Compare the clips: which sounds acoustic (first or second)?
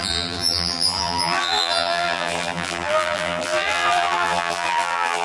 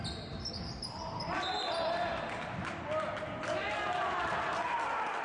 second